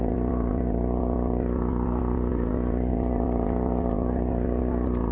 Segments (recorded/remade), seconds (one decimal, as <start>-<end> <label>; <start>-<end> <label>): 0.0-5.1 recorded